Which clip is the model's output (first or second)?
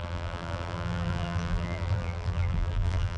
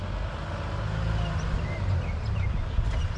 first